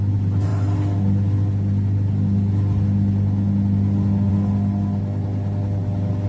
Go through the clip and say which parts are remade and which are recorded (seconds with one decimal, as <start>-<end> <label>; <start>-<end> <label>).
0.0-6.3 recorded

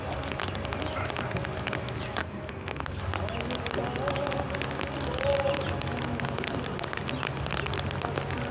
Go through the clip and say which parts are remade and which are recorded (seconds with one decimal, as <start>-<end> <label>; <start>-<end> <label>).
0.0-2.2 recorded; 2.2-3.0 remade; 3.0-8.5 recorded

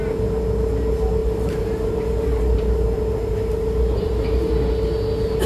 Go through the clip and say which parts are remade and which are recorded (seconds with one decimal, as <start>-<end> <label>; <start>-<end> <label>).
0.0-1.2 recorded; 1.2-4.5 remade; 4.5-5.5 recorded

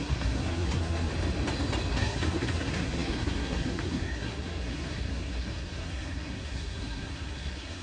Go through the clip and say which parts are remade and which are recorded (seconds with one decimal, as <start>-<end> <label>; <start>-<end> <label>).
0.0-1.1 remade; 1.1-1.9 recorded; 1.9-7.8 remade

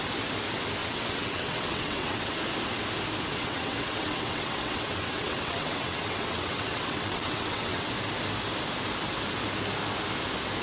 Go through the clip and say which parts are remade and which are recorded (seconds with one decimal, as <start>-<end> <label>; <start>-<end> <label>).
0.0-0.8 recorded; 0.8-2.3 remade; 2.3-3.3 recorded; 3.3-7.9 remade; 7.9-10.6 recorded

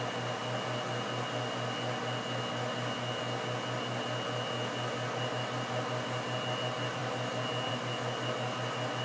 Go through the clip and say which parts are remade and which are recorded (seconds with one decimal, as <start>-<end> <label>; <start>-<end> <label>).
0.0-9.0 recorded